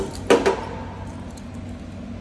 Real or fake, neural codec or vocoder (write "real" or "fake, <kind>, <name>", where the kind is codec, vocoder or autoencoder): real